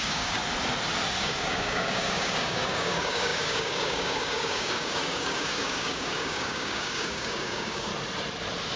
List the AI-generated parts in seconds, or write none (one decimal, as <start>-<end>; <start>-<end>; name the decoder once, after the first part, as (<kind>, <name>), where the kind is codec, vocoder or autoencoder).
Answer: 0.0-0.4 (codec, DAC); 1.2-7.9